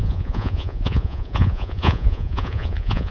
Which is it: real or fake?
fake